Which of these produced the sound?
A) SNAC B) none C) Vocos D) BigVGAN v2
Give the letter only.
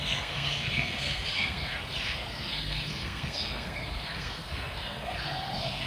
A